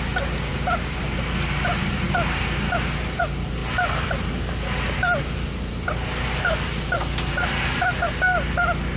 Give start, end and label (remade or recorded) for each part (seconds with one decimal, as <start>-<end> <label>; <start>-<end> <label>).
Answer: 0.0-9.0 recorded